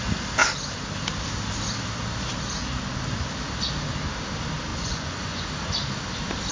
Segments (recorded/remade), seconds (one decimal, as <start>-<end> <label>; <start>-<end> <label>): 0.0-4.7 recorded; 4.7-5.5 remade; 5.5-6.5 recorded